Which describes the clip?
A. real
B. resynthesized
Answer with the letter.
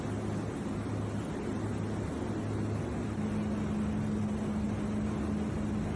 A